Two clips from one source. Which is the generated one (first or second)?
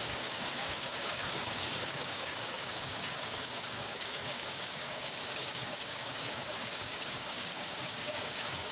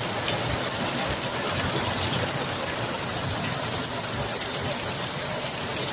first